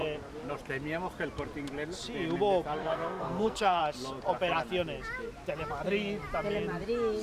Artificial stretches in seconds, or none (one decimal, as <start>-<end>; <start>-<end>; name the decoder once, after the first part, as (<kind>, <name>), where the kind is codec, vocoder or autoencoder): 2.8-3.8 (codec, SNAC)